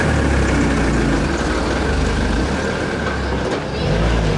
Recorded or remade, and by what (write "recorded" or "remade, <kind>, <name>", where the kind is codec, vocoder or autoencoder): recorded